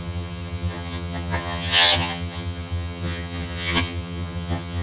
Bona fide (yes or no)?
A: no